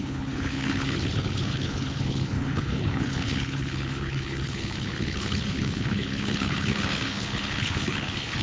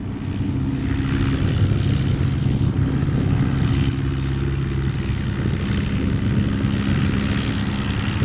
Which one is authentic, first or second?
second